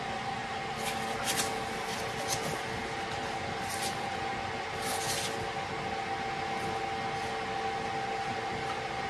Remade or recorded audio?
recorded